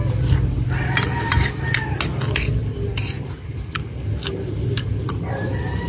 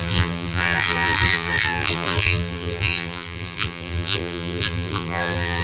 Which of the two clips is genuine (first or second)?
first